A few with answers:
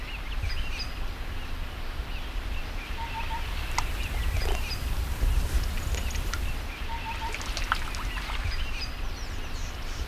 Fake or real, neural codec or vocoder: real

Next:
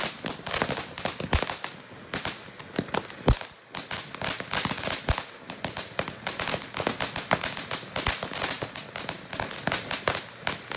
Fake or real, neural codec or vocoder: real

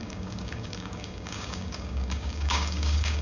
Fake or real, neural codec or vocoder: fake, codec, DAC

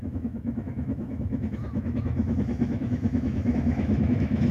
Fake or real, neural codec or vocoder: fake, autoencoder, DAC-VAE